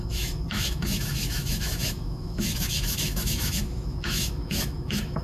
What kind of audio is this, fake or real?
fake